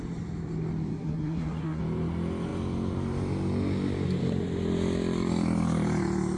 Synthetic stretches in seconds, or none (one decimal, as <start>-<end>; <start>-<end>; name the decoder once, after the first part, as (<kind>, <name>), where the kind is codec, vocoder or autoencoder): 0.9-1.8 (codec, SNAC)